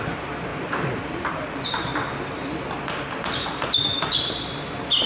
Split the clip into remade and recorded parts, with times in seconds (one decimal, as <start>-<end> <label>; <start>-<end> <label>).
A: 0.0-1.9 remade; 1.9-3.2 recorded; 3.2-5.1 remade